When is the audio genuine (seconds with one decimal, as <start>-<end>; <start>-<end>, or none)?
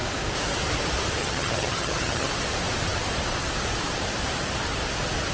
0.0-1.2; 2.3-5.3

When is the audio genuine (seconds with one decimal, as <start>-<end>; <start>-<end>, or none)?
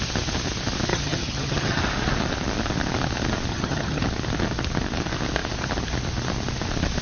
0.0-0.9; 1.8-3.5; 4.0-7.0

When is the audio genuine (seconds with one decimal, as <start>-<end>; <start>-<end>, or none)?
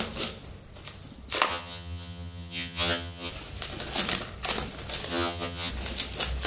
0.0-1.5; 3.3-5.1; 5.7-6.5